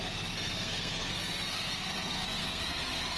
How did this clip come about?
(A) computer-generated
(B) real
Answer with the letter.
A